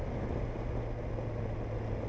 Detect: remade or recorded recorded